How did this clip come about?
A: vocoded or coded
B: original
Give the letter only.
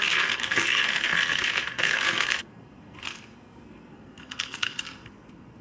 A